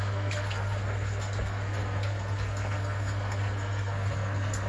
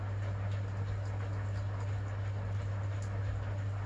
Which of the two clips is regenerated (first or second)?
first